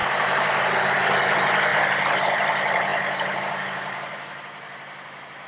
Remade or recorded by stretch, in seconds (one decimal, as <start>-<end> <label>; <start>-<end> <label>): 0.0-1.7 remade; 1.7-2.2 recorded; 2.2-5.5 remade